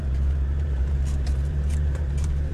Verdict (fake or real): fake